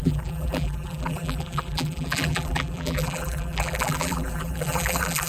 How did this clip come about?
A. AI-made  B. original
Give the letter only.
A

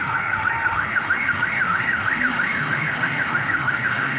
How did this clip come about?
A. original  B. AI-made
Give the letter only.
B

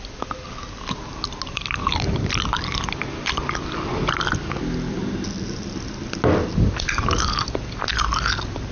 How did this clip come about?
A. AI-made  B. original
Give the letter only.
B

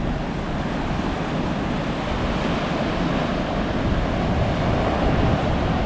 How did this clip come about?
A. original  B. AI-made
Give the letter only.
A